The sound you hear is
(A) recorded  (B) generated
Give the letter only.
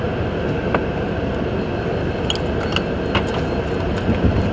A